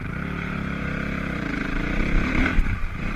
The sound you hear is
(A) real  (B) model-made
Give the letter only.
B